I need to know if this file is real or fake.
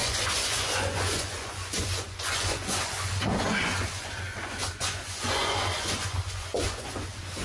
fake